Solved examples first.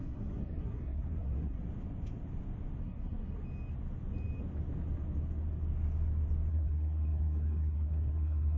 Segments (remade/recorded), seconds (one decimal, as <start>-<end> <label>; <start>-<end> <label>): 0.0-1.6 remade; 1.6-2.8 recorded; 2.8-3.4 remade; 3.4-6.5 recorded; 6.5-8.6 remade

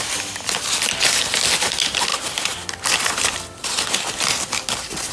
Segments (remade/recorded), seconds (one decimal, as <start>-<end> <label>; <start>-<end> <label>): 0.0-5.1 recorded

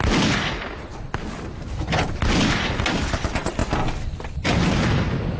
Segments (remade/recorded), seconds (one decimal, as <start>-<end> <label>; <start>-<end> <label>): 0.0-5.4 recorded

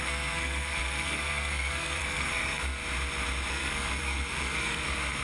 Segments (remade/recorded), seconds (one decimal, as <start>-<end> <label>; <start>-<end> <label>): 0.0-2.8 remade; 2.8-3.5 recorded; 3.5-5.2 remade